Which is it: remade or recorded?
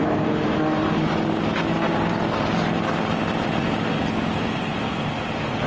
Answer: recorded